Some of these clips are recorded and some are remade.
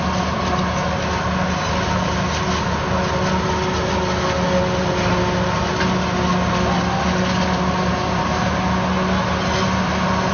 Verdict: recorded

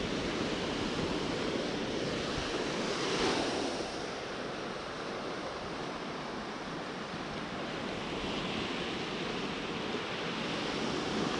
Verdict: recorded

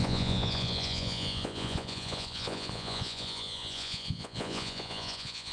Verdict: remade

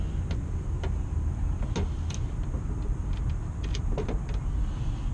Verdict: recorded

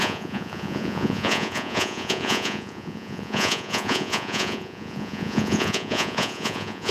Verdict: remade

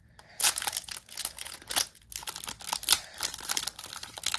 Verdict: recorded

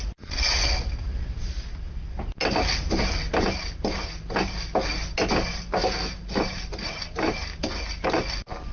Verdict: recorded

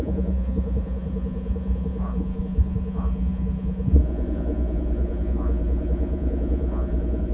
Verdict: remade